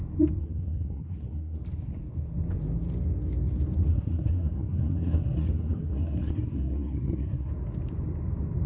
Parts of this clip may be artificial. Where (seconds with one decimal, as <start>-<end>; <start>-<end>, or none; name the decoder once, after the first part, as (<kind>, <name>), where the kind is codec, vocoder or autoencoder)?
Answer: 0.4-1.6 (codec, SNAC); 3.9-7.5